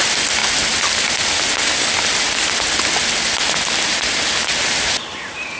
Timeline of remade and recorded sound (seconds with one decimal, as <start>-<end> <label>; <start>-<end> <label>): 0.0-0.4 remade; 0.4-3.8 recorded; 3.8-5.6 remade